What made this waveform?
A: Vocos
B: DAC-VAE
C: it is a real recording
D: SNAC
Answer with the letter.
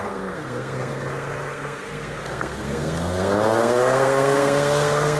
D